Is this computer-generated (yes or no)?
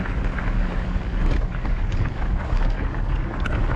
yes